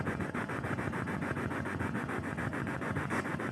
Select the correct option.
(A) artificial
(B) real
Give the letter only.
A